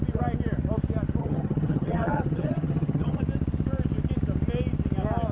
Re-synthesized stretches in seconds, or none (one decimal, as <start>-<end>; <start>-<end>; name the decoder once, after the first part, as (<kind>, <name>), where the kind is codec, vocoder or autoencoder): 1.2-3.2 (vocoder, HiFi-GAN)

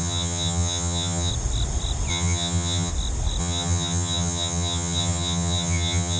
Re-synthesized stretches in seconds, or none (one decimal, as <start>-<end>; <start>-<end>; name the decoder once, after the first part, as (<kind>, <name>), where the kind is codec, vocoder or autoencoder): 0.0-1.3 (vocoder, HiFi-GAN); 2.1-2.9; 3.4-6.2

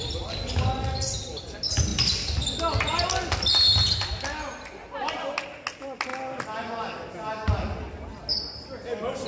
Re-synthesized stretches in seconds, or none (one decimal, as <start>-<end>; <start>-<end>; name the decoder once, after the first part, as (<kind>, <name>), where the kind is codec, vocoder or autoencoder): none